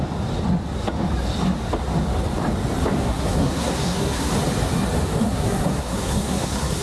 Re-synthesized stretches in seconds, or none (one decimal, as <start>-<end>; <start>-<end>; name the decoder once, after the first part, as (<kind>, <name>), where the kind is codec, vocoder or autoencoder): 3.0-4.3 (codec, SNAC); 5.2-6.8